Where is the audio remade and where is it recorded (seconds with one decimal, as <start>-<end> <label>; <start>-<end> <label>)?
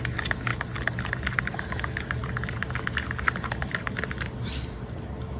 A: 0.0-5.4 recorded